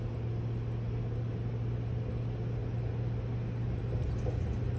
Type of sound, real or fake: real